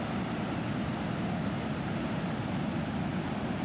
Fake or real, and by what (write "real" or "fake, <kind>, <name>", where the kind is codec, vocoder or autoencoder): real